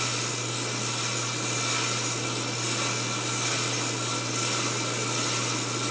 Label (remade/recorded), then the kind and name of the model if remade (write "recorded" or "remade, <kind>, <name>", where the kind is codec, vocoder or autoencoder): recorded